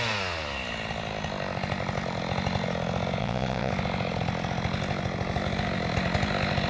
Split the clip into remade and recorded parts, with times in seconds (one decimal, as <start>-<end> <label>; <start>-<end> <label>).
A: 0.0-3.2 recorded; 3.2-3.7 remade; 3.7-6.7 recorded

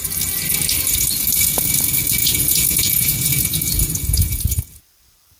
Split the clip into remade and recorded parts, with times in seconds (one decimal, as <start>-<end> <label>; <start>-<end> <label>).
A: 0.0-2.2 recorded; 2.2-4.6 remade; 4.6-5.4 recorded

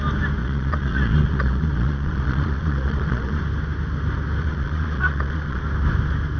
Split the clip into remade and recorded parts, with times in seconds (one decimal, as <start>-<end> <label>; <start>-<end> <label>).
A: 0.0-0.4 recorded; 0.4-3.4 remade; 3.4-4.4 recorded; 4.4-5.6 remade; 5.6-6.4 recorded